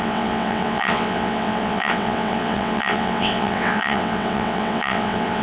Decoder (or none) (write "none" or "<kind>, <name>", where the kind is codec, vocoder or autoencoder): vocoder, WaveNeXt